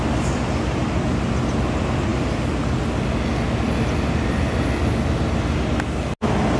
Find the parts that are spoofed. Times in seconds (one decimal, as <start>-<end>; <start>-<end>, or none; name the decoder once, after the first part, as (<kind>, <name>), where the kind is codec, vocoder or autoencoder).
none